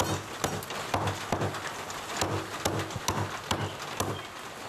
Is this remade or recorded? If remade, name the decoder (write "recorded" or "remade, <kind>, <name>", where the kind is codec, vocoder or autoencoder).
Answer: recorded